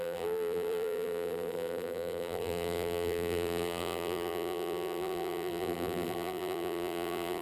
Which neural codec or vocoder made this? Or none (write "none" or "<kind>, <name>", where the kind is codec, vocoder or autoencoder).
vocoder, BigVGAN v2